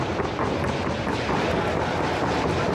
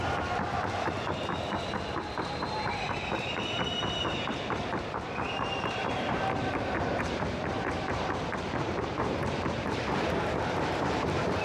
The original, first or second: first